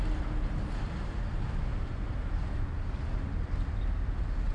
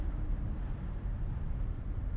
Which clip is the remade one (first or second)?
second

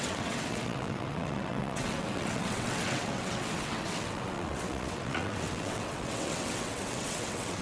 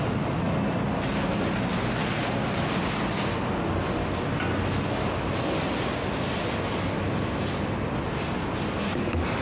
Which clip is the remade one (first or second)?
first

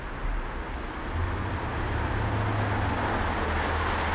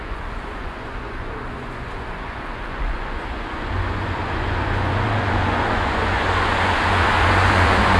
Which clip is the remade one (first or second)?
second